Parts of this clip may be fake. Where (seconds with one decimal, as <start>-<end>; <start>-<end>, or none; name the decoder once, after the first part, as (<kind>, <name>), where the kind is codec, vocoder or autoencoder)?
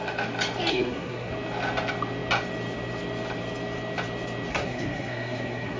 0.7-1.3 (codec, SNAC); 4.5-5.8